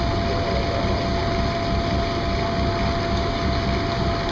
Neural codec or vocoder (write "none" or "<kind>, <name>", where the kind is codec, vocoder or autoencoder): none